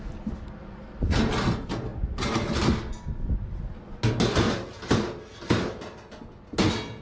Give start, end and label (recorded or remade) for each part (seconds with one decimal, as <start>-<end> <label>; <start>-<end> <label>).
0.0-7.0 recorded